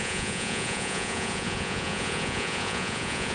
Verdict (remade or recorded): remade